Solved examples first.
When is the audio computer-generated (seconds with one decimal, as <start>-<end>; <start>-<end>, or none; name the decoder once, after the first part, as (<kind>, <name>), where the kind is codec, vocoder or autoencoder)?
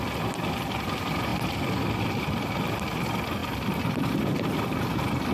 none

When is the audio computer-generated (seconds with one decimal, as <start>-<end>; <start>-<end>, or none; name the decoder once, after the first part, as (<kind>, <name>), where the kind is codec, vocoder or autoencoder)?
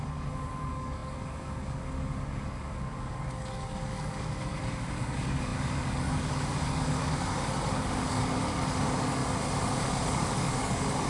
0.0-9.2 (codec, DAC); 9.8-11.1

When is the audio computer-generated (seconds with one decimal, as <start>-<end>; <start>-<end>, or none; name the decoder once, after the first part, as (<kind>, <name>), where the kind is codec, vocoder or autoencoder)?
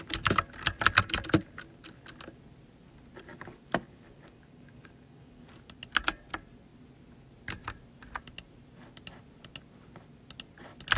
3.3-5.5 (codec, DAC)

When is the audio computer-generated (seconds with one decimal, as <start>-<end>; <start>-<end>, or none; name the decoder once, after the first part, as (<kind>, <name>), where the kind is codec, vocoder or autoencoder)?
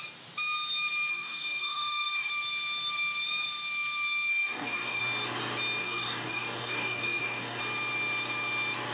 1.1-2.3 (codec, DAC); 4.3-5.0; 5.8-7.6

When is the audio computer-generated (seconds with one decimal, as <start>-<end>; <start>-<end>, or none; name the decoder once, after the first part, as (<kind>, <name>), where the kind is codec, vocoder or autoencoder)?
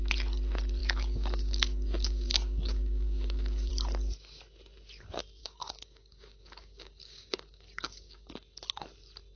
0.8-3.7 (codec, DAC); 5.4-8.3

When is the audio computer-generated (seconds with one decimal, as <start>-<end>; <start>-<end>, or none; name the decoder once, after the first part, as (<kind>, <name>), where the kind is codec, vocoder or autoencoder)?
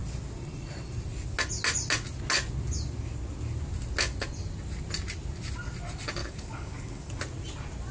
6.2-7.2 (codec, DAC)